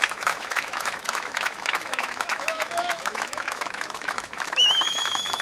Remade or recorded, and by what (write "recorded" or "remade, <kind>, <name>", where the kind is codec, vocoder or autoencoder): remade, autoencoder, DAC-VAE